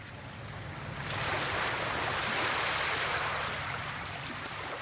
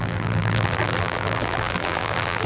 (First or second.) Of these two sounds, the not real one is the second